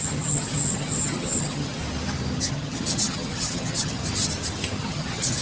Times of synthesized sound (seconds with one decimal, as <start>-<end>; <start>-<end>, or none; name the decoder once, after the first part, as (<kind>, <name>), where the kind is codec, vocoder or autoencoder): 0.0-1.8 (vocoder, HiFi-GAN); 2.4-4.0; 4.8-5.4